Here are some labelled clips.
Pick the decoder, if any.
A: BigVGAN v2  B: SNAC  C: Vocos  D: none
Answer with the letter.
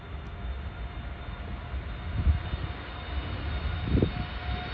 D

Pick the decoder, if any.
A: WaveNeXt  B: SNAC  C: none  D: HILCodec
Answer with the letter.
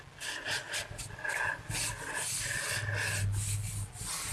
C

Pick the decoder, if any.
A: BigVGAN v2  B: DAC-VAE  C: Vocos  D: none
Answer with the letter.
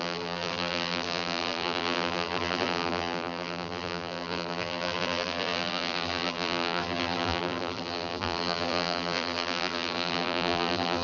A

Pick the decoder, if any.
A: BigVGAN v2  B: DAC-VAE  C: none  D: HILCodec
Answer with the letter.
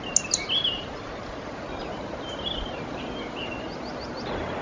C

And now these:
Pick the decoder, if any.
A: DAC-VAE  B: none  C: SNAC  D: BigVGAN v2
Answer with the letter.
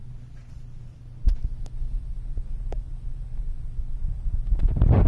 B